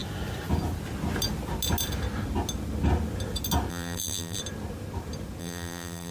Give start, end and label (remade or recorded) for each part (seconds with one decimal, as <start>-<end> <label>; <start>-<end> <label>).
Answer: 0.0-3.7 recorded; 3.7-4.4 remade; 4.4-5.4 recorded; 5.4-6.1 remade